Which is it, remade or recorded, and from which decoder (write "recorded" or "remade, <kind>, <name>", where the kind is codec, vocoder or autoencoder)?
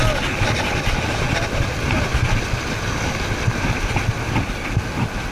recorded